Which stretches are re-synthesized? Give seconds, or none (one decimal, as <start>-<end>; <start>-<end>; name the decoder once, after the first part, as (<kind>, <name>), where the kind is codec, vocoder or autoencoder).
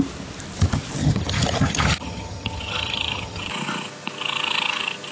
1.0-3.5 (vocoder, HiFi-GAN)